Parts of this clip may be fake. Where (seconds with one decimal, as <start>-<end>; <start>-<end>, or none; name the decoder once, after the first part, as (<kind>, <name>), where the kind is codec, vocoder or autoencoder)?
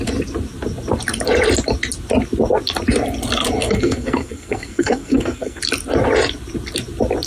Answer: 3.6-5.6 (codec, SNAC)